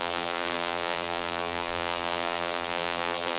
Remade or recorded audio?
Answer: remade